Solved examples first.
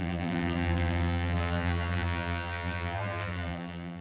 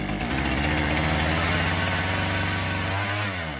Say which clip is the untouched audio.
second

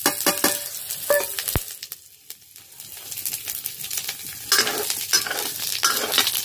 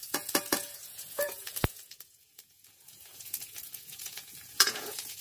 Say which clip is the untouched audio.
first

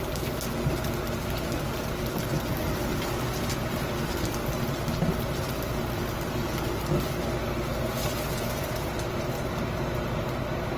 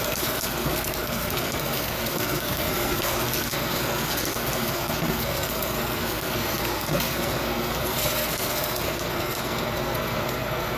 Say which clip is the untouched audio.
first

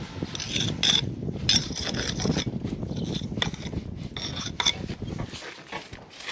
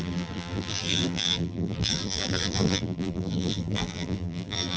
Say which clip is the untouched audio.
first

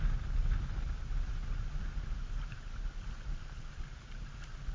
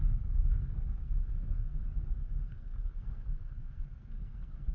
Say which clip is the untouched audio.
first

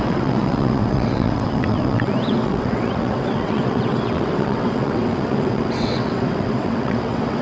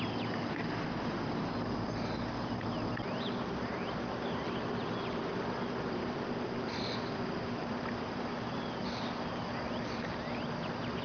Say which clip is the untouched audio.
second